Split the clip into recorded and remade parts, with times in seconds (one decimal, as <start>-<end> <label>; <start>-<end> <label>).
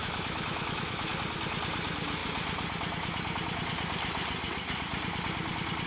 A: 0.0-1.1 remade; 1.1-5.9 recorded